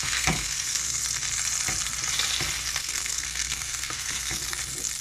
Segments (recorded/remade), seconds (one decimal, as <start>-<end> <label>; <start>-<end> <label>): 0.0-1.0 remade; 1.0-2.8 recorded; 2.8-4.4 remade; 4.4-5.0 recorded